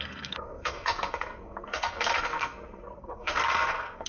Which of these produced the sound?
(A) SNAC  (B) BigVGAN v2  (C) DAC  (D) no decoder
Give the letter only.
A